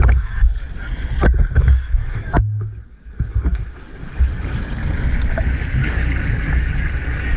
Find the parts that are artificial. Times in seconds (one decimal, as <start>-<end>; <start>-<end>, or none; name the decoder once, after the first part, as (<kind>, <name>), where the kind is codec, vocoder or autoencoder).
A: 2.0-4.6 (codec, DAC); 5.8-7.4